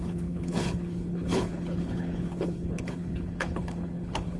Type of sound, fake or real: fake